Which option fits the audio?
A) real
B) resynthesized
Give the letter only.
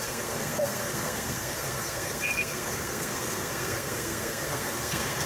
B